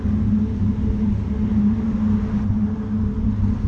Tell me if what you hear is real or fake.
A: real